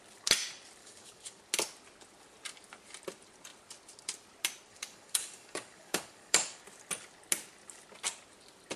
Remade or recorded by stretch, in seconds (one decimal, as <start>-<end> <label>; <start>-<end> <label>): 0.0-0.8 recorded; 0.8-1.4 remade; 1.4-4.7 recorded; 4.7-6.6 remade; 6.6-8.8 recorded

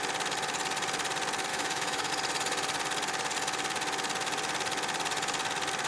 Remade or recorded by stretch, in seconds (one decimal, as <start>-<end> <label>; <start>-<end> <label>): 0.0-1.5 recorded; 1.5-2.1 remade; 2.1-5.9 recorded

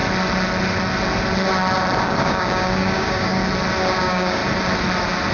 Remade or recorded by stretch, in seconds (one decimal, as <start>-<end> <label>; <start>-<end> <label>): 0.0-2.0 recorded; 2.0-3.4 remade; 3.4-4.0 recorded; 4.0-4.4 remade; 4.4-5.3 recorded